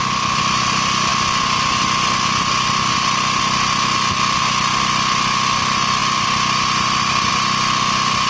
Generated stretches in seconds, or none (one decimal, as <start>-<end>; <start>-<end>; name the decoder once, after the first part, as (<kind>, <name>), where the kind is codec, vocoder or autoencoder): none